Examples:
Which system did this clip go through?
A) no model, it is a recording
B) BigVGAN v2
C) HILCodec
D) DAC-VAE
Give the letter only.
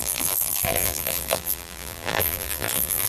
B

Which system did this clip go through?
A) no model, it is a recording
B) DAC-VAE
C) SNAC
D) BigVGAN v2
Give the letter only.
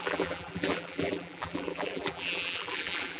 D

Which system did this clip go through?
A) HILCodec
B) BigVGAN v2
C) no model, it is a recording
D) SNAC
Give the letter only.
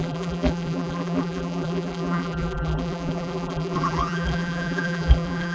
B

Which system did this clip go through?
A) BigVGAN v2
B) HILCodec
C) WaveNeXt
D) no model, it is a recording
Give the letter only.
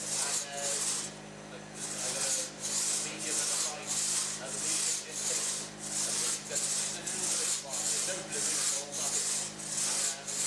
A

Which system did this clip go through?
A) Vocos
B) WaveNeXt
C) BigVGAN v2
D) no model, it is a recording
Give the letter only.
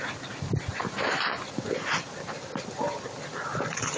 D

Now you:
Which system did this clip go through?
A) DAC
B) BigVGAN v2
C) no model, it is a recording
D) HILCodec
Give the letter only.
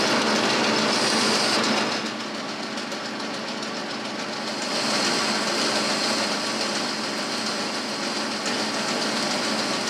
C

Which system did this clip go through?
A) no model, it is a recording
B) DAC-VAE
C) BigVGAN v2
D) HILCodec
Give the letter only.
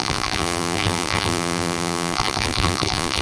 C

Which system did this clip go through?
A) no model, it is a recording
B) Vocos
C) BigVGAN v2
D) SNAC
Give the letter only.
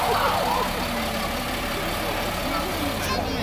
A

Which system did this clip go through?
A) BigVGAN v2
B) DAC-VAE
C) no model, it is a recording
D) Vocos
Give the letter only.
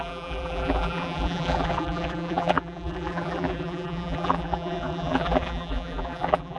A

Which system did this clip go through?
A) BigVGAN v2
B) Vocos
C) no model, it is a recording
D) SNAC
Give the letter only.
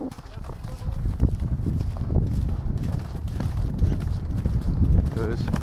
A